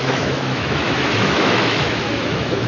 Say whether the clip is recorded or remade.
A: remade